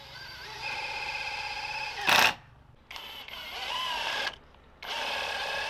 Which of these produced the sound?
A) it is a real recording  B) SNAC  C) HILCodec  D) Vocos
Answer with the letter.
A